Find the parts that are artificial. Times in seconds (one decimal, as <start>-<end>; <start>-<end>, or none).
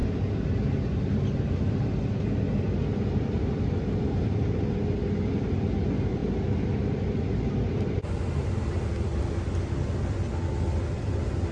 none